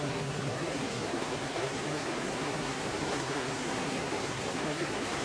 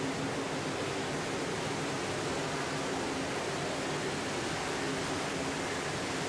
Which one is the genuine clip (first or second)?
second